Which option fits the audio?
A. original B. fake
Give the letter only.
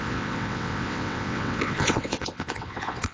B